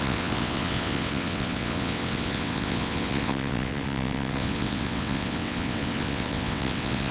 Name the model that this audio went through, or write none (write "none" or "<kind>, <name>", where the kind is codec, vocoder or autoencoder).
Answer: vocoder, WaveNeXt